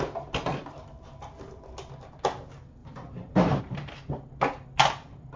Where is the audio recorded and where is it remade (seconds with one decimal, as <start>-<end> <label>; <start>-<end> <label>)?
0.0-2.8 recorded; 2.8-3.6 remade; 3.6-5.4 recorded